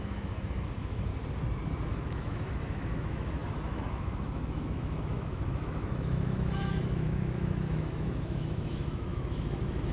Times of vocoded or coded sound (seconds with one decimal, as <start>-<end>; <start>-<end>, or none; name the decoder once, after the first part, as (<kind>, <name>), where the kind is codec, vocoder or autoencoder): 0.0-1.1 (autoencoder, DAC-VAE); 1.9-9.9

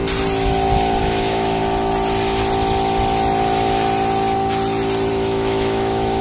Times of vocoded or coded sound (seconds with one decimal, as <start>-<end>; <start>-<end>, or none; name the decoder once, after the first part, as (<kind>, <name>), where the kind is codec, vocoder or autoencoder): 1.0-1.6 (autoencoder, DAC-VAE); 5.1-6.2

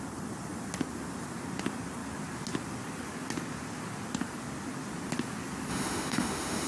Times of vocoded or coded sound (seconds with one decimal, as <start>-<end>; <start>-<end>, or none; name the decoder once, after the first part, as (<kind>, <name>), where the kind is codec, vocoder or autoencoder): 5.7-6.7 (autoencoder, DAC-VAE)

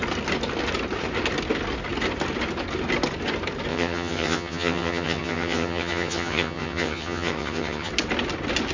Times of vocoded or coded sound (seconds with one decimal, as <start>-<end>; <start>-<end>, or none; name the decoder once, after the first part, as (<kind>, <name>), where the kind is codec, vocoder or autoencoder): 3.7-7.9 (vocoder, HiFi-GAN)

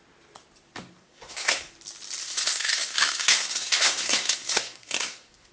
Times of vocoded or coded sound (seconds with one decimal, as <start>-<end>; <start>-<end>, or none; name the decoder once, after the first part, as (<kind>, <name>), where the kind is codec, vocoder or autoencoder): 1.0-1.7 (codec, SNAC); 2.2-5.5